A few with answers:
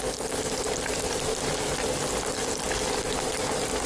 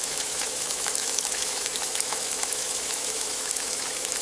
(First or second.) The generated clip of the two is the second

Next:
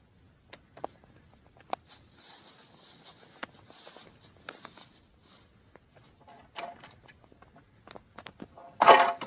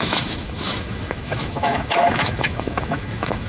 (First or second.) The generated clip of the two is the second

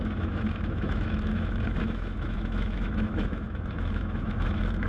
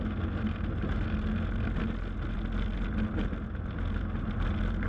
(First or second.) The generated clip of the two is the first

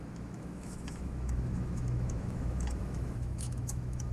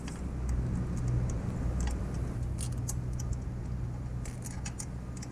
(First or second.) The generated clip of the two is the first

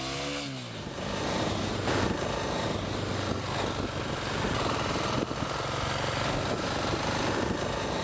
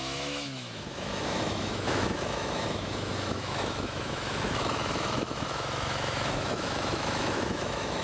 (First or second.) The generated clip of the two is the second